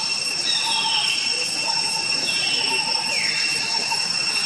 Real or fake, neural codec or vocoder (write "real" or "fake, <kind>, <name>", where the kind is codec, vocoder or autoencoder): real